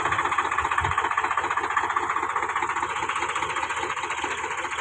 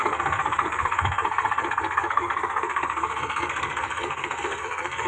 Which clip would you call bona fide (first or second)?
first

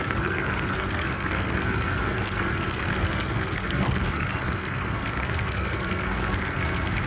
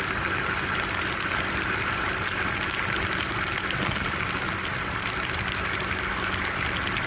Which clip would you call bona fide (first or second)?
second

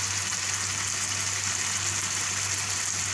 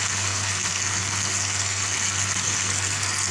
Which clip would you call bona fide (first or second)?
first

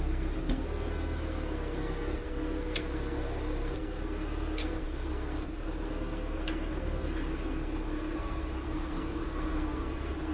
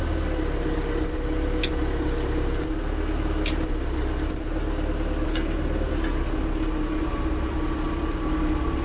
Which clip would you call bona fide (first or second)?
second